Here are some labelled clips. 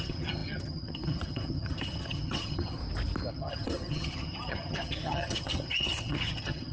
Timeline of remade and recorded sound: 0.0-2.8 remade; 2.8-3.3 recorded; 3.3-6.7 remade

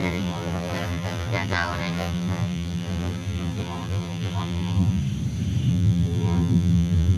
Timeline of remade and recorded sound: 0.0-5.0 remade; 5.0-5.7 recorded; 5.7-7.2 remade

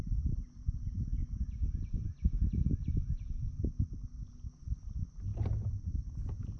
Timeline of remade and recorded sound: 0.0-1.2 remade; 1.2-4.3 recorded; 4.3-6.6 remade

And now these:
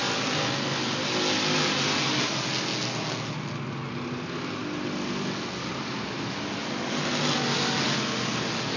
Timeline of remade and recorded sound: 0.0-8.8 recorded

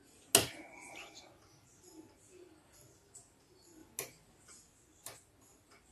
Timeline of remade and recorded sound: 0.0-1.1 recorded; 1.1-3.8 remade; 3.8-4.5 recorded; 4.5-5.9 remade

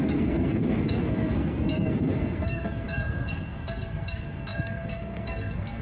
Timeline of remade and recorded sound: 0.0-5.8 remade